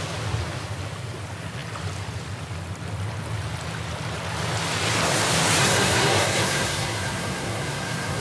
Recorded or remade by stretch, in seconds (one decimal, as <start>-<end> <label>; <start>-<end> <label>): 0.0-5.6 recorded; 5.6-8.2 remade